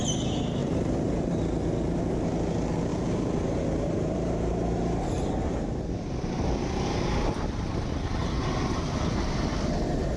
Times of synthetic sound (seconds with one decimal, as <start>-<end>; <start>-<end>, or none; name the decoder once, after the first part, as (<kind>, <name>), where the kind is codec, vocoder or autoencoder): 0.6-1.7 (vocoder, BigVGAN v2); 2.9-7.7; 8.1-9.0